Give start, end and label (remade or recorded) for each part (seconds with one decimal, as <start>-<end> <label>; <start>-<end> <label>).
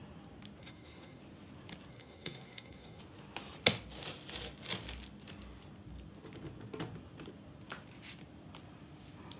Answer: 0.0-0.6 recorded; 0.6-1.2 remade; 1.2-1.9 recorded; 1.9-3.0 remade; 3.0-9.4 recorded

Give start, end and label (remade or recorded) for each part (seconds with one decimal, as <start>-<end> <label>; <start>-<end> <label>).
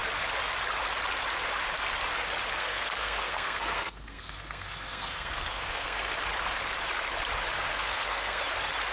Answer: 0.0-2.6 recorded; 2.6-6.1 remade; 6.1-7.7 recorded; 7.7-8.4 remade; 8.4-8.9 recorded